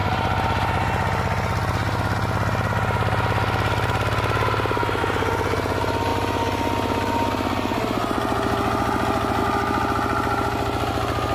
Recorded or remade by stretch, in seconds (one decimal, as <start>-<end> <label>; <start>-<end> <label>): 0.0-11.3 recorded

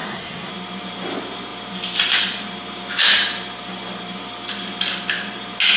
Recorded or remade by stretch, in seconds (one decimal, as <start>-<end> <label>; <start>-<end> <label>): 0.0-0.5 remade; 0.5-5.8 recorded

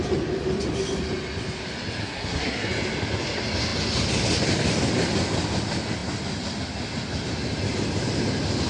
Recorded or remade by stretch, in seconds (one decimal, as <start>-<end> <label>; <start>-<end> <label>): 0.0-2.0 recorded; 2.0-2.7 remade; 2.7-8.7 recorded

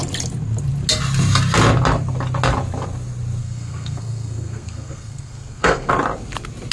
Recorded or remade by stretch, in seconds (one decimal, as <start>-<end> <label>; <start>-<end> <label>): 0.0-3.4 recorded; 3.4-5.9 remade; 5.9-6.7 recorded

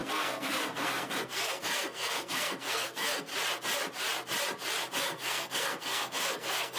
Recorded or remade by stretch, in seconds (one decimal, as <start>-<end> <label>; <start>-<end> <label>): 0.0-3.3 remade; 3.3-5.0 recorded; 5.0-6.8 remade

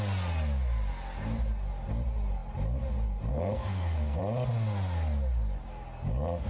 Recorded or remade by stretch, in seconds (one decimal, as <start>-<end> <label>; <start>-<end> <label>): 0.0-3.3 recorded; 3.3-4.2 remade; 4.2-6.5 recorded

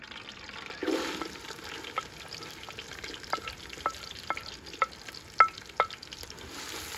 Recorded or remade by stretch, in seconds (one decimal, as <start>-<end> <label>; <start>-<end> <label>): 0.0-7.0 recorded

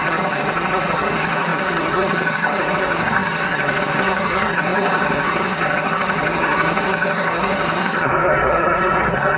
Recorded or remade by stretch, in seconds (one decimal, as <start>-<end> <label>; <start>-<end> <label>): 0.0-9.4 remade